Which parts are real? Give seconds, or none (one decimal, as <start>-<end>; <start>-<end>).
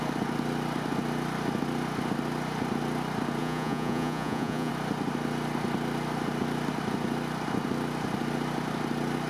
0.0-3.4; 4.7-9.3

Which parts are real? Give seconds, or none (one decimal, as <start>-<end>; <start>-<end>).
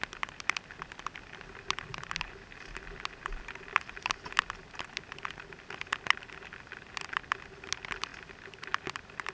0.0-9.3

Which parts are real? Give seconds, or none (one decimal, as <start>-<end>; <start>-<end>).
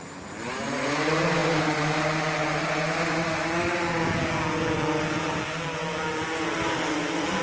0.0-7.4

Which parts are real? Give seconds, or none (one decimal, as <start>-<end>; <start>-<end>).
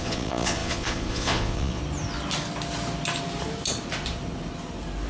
1.8-5.1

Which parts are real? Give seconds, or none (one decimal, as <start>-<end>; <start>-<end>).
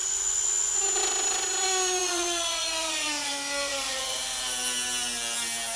0.8-2.0; 4.4-5.8